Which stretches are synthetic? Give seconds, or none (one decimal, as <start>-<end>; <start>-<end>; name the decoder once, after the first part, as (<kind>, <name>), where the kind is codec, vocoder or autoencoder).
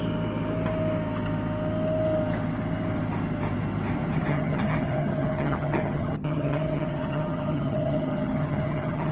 4.3-9.1 (vocoder, HiFi-GAN)